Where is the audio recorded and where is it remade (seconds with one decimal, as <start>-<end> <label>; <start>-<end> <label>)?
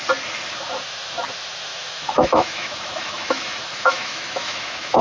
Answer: 0.0-1.7 recorded; 1.7-5.0 remade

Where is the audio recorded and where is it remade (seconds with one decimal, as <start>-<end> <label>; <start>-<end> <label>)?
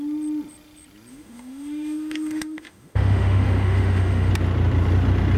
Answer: 0.0-1.1 recorded; 1.1-4.3 remade; 4.3-5.4 recorded